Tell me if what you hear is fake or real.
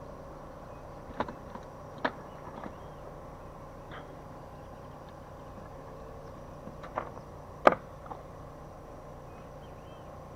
real